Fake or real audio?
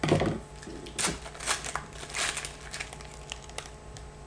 real